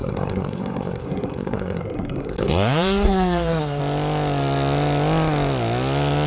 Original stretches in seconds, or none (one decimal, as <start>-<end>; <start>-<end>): 3.8-6.3